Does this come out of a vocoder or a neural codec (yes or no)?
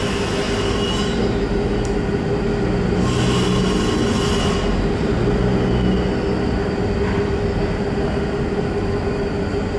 no